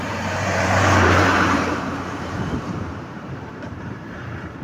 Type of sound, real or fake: fake